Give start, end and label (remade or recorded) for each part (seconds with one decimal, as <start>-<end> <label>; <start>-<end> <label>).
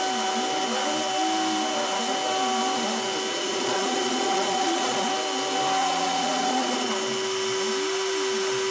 0.0-3.3 recorded; 3.3-5.1 remade; 5.1-5.8 recorded; 5.8-6.9 remade; 6.9-8.7 recorded